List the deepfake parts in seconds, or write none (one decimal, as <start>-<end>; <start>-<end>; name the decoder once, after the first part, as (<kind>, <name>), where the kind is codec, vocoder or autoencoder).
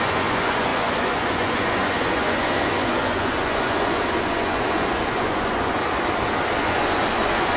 0.0-5.8 (vocoder, Vocos); 6.6-7.6